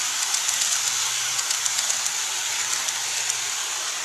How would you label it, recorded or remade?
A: recorded